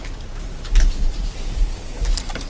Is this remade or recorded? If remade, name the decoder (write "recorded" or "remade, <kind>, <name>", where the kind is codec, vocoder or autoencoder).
remade, vocoder, BigVGAN v2